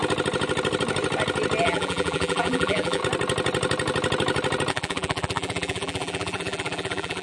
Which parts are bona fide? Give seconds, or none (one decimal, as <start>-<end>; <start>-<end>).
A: 0.0-1.6; 3.0-4.7